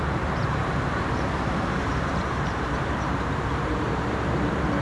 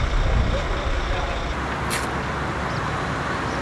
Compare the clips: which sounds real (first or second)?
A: second